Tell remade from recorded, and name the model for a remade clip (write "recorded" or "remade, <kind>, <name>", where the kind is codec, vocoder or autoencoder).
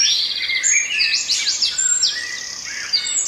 recorded